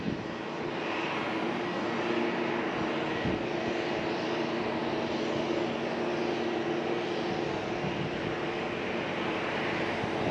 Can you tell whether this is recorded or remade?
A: recorded